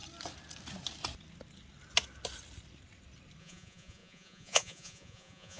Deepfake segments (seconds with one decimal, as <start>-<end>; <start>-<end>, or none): 3.4-5.6